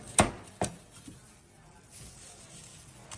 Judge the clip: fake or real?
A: real